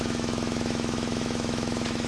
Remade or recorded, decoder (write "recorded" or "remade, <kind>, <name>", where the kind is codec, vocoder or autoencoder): remade, autoencoder, DAC-VAE